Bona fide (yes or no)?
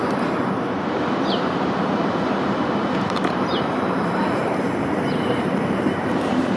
no